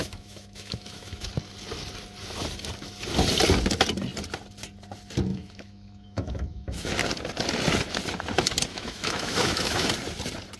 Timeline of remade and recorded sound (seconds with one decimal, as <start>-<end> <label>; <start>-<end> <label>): 0.0-1.3 remade; 1.3-5.3 recorded; 5.3-6.9 remade; 6.9-8.7 recorded; 8.7-9.9 remade; 9.9-10.6 recorded